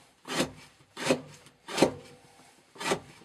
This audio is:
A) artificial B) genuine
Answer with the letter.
A